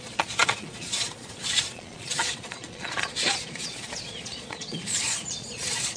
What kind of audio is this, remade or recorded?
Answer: remade